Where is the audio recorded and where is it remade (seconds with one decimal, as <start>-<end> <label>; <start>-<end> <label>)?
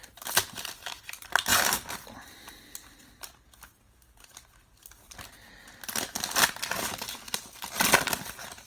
0.0-8.7 recorded